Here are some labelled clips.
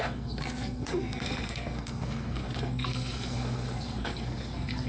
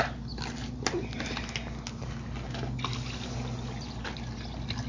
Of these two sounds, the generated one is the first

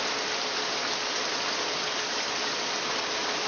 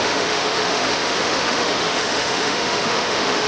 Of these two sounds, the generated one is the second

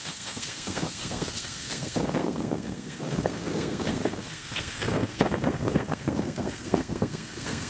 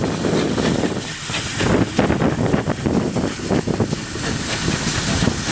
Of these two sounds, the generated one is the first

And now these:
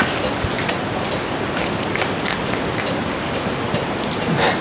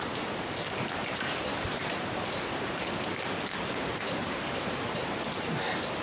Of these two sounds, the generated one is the second